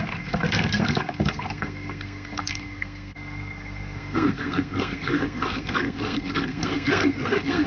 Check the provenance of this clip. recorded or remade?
remade